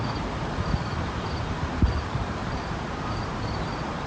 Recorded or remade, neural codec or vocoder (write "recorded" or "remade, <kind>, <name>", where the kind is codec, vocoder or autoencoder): remade, vocoder, BigVGAN v2